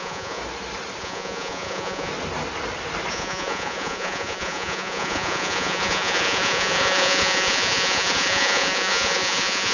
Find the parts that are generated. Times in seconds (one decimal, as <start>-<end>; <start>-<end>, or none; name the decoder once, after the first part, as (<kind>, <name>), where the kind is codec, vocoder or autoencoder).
0.0-0.4 (vocoder, Vocos); 1.0-2.1; 3.1-9.7